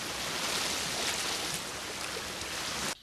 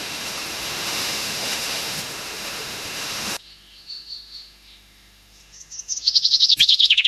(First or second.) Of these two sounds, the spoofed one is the second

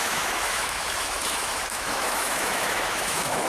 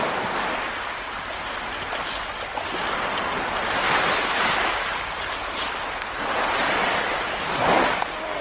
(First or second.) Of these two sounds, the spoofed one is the first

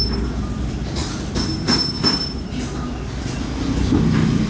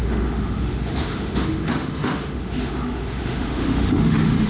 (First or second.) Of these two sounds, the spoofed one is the second